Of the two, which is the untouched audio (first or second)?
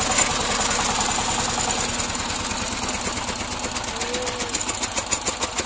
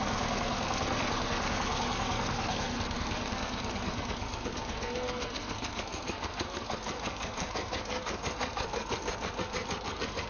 first